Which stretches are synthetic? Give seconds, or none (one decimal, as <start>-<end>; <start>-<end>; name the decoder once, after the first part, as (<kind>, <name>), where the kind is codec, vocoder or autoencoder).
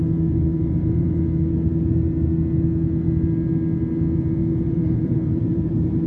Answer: 0.5-1.2 (vocoder, BigVGAN v2); 4.4-6.1